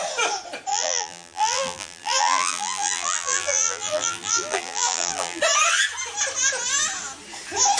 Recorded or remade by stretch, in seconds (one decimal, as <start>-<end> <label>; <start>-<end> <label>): 0.0-0.7 recorded; 0.7-5.4 remade; 5.4-7.8 recorded